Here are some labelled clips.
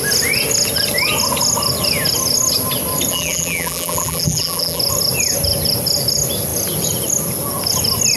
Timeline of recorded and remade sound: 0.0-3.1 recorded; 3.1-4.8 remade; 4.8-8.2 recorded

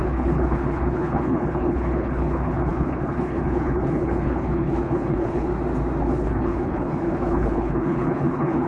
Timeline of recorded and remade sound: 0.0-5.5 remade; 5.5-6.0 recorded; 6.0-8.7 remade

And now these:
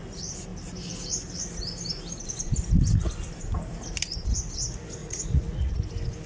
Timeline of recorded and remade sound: 0.0-5.0 recorded; 5.0-5.7 remade; 5.7-6.3 recorded